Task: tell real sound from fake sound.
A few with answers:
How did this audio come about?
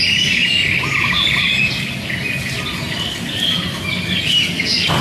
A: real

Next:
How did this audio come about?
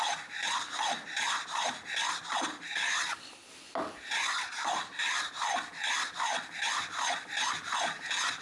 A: real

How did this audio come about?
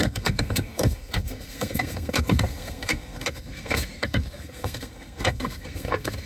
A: fake